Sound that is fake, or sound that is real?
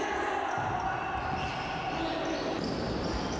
real